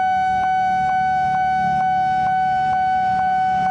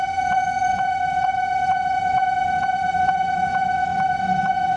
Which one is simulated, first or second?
second